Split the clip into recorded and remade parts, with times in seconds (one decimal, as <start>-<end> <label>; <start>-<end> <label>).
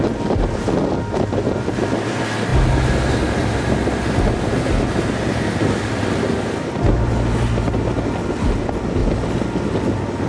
0.0-10.3 recorded